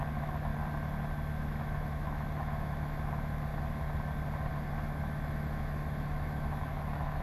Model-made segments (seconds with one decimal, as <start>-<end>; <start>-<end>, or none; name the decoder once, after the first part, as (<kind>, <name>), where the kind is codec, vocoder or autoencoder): 0.0-0.5 (autoencoder, DAC-VAE); 1.4-3.5; 4.7-7.2